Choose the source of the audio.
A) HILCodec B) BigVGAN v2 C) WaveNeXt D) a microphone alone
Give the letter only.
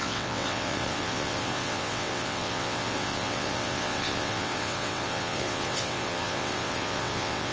C